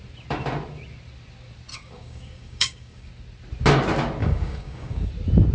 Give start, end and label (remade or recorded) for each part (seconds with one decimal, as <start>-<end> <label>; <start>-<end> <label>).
0.0-1.7 recorded; 1.7-3.1 remade; 3.1-4.2 recorded; 4.2-5.1 remade; 5.1-5.5 recorded